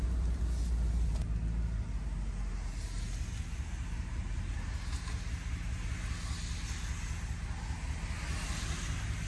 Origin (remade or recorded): recorded